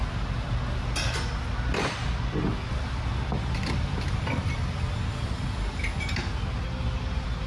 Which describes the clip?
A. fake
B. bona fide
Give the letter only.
B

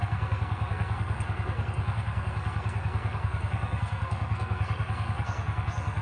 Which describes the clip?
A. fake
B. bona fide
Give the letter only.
A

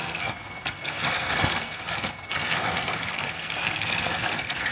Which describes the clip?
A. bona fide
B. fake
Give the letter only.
B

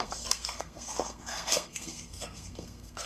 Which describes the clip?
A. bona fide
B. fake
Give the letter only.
B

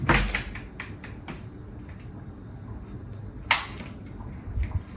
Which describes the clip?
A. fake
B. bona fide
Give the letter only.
B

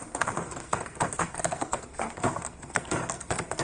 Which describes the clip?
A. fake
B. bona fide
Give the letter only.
A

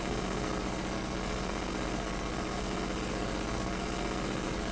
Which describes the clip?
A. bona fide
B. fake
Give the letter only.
B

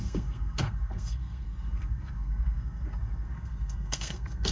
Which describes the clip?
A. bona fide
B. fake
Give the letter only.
B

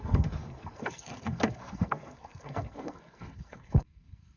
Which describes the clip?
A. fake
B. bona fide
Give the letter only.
A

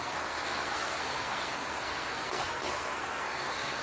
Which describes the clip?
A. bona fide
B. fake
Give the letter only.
B